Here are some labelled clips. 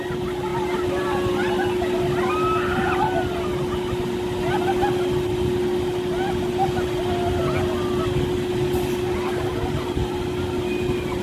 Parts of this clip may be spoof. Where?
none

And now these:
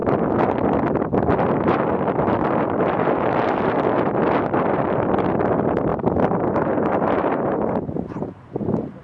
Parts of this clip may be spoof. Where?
5.9-8.1 (vocoder, BigVGAN v2)

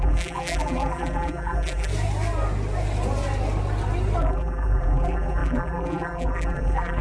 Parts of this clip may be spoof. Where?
0.0-1.9 (vocoder, BigVGAN v2); 4.2-7.0

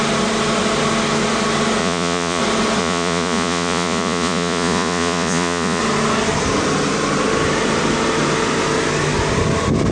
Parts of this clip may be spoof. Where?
1.8-2.4 (vocoder, Vocos); 2.8-5.8

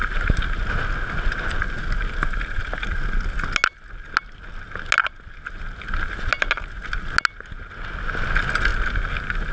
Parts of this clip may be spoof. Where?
none

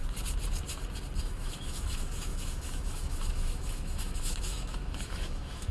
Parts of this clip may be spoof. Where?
1.2-5.7 (autoencoder, DAC-VAE)

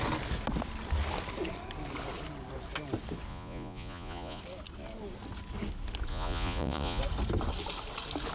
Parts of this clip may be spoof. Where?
3.3-4.4 (vocoder, Vocos); 6.1-7.0